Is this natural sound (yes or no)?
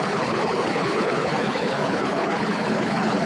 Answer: no